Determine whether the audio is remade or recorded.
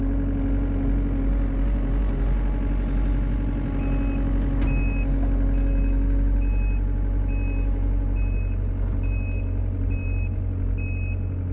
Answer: recorded